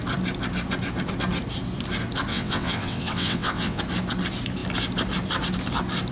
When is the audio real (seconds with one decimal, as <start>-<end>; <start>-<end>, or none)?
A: 0.0-2.3; 3.8-6.1